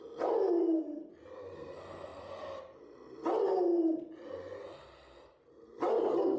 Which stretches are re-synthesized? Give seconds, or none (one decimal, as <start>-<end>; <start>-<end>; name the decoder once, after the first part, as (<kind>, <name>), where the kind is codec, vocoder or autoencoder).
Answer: none